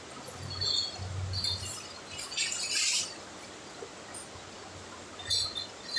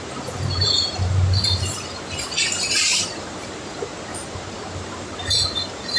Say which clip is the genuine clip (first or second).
first